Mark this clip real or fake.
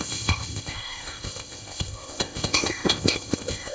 fake